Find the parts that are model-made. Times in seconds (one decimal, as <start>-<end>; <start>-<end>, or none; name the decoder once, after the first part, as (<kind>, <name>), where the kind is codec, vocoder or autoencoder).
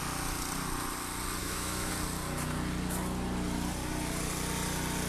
1.4-1.9 (autoencoder, DAC-VAE)